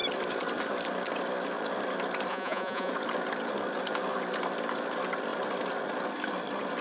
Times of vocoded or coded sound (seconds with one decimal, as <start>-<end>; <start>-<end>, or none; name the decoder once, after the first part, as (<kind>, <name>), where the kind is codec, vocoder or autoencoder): 2.3-2.9 (vocoder, Vocos)